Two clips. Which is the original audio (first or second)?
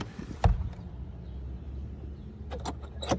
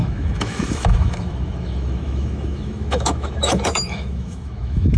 first